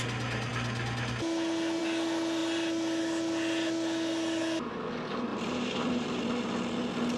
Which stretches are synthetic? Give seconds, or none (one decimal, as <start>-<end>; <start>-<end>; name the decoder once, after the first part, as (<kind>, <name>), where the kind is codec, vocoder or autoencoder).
2.4-3.0 (vocoder, BigVGAN v2); 5.3-6.2